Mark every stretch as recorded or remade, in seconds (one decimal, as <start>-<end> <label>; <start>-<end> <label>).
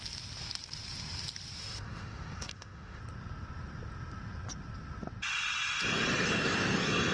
0.0-1.6 recorded; 1.6-3.0 remade; 3.0-7.1 recorded